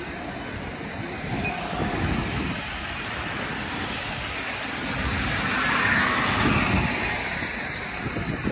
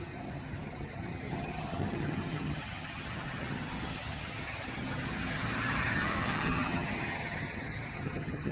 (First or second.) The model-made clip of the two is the second